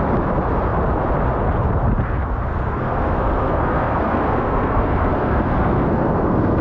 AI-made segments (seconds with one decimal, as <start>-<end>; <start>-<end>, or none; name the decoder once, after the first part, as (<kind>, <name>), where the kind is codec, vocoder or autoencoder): 2.5-6.6 (codec, SNAC)